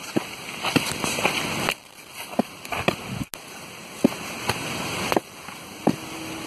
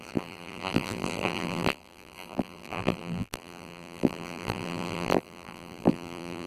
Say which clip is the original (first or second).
first